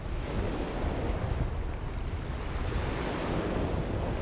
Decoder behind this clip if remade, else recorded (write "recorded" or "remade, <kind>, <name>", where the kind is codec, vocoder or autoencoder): recorded